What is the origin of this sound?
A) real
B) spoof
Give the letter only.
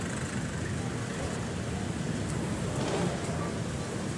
B